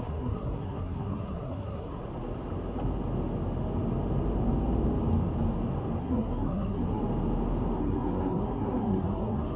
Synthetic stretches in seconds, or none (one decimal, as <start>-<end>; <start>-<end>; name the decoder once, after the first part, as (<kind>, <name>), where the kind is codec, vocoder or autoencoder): 0.0-2.0 (codec, SNAC); 6.0-7.0; 7.8-9.6